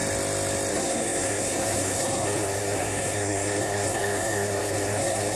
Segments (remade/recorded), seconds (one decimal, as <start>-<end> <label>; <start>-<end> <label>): 0.0-0.7 recorded; 0.7-5.4 remade